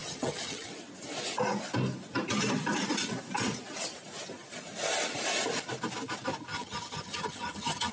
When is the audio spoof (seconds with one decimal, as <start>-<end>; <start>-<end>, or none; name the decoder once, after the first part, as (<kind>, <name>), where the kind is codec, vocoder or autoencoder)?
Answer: 0.0-0.7 (vocoder, HiFi-GAN); 6.5-7.9